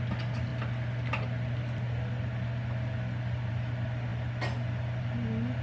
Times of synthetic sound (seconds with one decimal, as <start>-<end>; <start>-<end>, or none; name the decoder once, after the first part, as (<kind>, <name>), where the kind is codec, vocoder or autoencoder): none